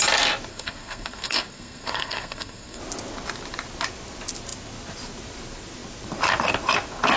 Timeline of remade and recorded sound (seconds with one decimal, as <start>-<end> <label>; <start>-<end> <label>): 0.0-0.5 recorded; 0.5-2.8 remade; 2.8-7.2 recorded